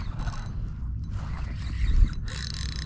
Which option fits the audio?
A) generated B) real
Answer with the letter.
B